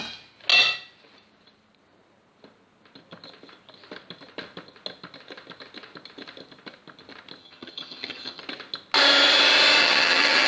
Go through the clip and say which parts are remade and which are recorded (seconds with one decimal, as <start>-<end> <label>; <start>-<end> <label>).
0.0-7.4 recorded; 7.4-8.4 remade; 8.4-9.8 recorded; 9.8-10.5 remade